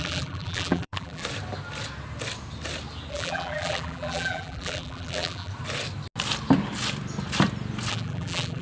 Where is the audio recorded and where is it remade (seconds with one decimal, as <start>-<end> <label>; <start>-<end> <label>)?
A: 0.0-1.2 remade; 1.2-3.1 recorded; 3.1-5.5 remade; 5.5-7.9 recorded; 7.9-8.6 remade